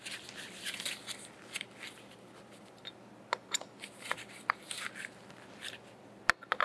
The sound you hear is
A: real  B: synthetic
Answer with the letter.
A